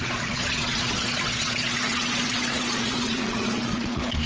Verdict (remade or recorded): remade